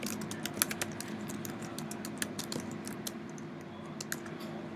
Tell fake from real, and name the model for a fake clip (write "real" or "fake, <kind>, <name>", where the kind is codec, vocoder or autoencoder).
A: real